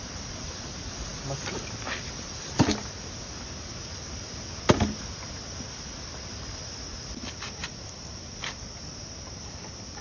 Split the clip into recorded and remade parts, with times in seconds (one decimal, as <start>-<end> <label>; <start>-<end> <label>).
0.0-7.6 recorded; 7.6-8.3 remade; 8.3-10.0 recorded